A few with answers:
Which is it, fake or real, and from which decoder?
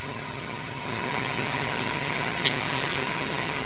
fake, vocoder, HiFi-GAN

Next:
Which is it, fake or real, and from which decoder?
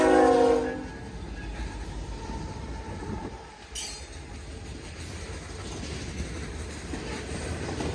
real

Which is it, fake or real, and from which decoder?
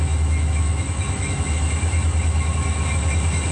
fake, autoencoder, DAC-VAE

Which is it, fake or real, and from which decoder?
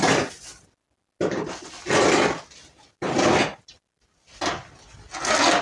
real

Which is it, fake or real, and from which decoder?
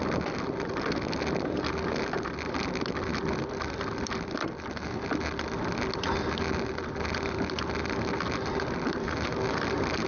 real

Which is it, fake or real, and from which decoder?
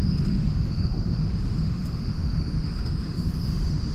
fake, autoencoder, DAC-VAE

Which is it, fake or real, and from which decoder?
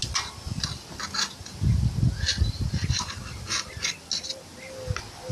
real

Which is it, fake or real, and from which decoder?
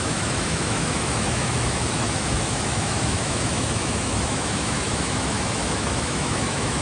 fake, autoencoder, DAC-VAE